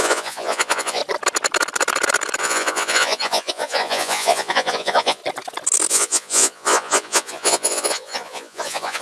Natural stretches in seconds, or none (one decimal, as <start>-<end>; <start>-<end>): 1.0-2.4; 5.2-5.9